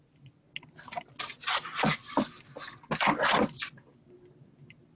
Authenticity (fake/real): real